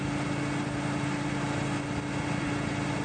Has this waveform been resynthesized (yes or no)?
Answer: no